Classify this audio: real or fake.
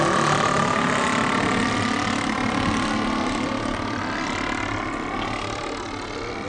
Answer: real